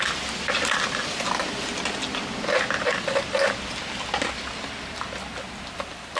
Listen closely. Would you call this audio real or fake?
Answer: real